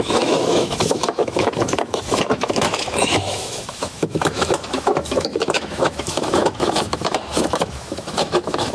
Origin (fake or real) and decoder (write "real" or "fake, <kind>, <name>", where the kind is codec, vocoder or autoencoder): fake, autoencoder, DAC-VAE